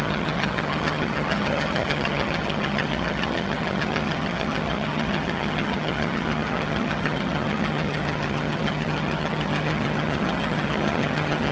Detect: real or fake fake